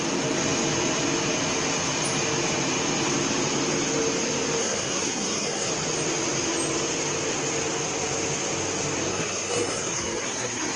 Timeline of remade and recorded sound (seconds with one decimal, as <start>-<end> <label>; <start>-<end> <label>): 0.0-4.6 recorded; 4.6-5.7 remade; 5.7-9.1 recorded; 9.1-10.8 remade